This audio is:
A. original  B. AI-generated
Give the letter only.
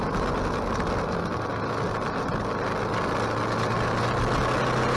A